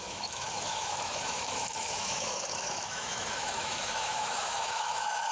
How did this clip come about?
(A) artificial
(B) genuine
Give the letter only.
A